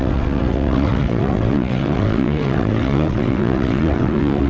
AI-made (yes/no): yes